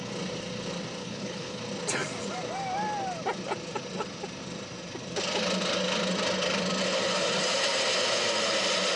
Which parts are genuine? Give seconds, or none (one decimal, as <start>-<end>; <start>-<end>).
0.0-1.0; 1.6-9.0